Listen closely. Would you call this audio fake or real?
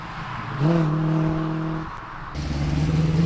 real